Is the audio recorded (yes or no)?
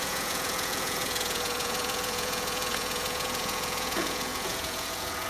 no